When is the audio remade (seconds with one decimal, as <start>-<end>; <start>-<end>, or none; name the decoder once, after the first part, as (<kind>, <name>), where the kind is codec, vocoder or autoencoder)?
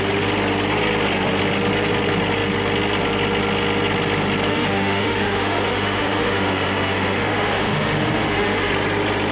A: 4.5-8.7 (autoencoder, DAC-VAE)